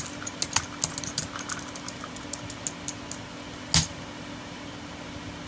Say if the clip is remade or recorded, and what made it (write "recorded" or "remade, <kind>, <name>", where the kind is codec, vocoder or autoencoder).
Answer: recorded